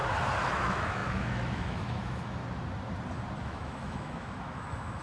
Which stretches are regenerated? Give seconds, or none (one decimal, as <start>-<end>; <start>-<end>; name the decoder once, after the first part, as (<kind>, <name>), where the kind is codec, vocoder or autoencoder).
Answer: 0.5-2.4 (autoencoder, DAC-VAE); 3.4-5.0

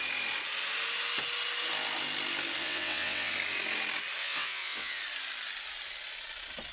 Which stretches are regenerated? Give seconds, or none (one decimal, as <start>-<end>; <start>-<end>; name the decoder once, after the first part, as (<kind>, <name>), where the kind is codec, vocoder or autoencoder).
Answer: 2.6-3.3 (vocoder, WaveNeXt); 4.2-5.0

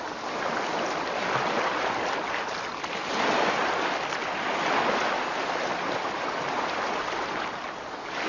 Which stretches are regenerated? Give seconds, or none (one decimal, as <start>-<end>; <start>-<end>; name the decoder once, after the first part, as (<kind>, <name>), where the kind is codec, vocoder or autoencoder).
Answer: none

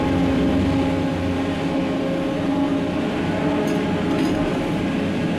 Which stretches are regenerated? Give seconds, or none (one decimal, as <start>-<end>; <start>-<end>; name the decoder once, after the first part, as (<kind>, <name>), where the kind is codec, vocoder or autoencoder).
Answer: none

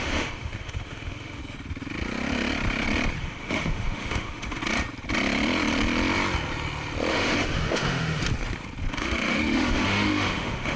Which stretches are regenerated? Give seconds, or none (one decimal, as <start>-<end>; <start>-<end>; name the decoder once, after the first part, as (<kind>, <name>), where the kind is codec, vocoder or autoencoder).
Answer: 0.0-1.4 (autoencoder, DAC-VAE); 3.2-4.6; 7.1-8.2; 8.9-10.8

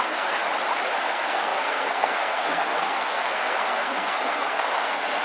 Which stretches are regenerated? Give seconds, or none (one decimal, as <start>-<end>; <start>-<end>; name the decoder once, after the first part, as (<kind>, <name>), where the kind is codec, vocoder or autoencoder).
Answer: 0.0-0.4 (codec, SNAC); 1.0-5.2